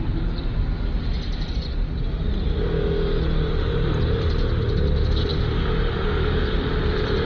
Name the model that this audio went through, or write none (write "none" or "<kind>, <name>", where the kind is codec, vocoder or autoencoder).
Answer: none